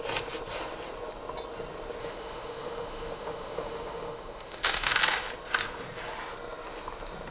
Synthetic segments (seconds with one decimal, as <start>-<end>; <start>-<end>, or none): 2.0-4.9